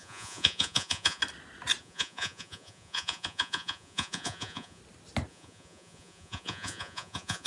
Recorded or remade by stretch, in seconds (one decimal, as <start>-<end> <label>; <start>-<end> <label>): 0.0-1.2 remade; 1.2-1.8 recorded; 1.8-4.8 remade; 4.8-5.3 recorded; 5.3-7.5 remade